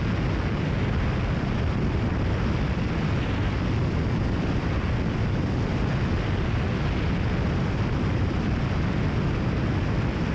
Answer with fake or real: real